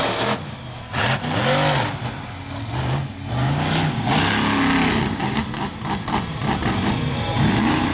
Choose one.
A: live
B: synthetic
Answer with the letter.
A